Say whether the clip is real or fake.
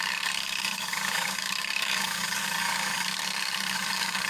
fake